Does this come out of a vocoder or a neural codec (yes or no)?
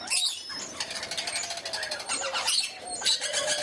no